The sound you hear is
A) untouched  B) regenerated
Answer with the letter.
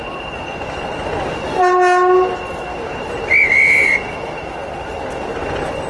A